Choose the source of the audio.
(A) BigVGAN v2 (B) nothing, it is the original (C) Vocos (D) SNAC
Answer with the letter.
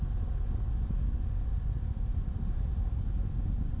B